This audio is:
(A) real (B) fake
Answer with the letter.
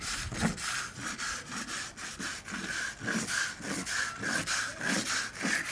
A